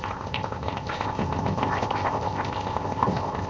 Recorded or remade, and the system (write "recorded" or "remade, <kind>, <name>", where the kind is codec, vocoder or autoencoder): remade, codec, ZipCodec